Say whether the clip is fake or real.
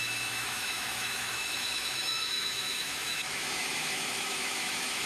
fake